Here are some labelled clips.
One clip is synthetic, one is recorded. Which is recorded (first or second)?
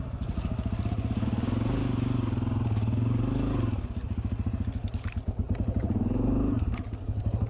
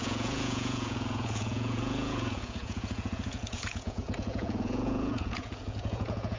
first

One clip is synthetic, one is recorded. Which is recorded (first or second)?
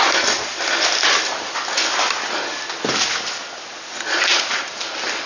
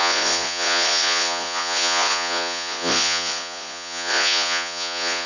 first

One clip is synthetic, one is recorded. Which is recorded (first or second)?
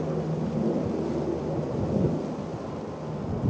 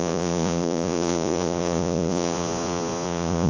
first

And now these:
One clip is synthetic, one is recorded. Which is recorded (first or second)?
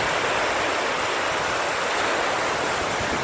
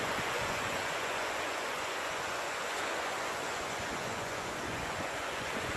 first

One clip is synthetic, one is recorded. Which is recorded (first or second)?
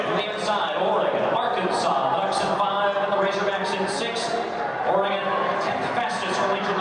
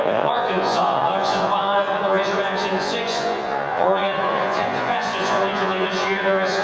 first